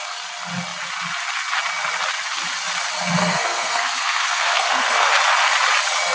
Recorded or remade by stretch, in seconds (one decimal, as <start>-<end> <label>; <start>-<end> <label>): 0.0-3.2 recorded; 3.2-5.1 remade; 5.1-6.1 recorded